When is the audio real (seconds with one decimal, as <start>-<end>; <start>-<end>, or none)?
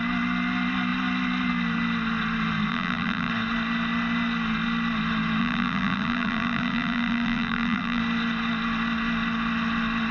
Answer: 0.0-2.7; 3.3-5.4; 8.0-10.1